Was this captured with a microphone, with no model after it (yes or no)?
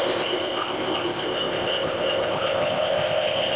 no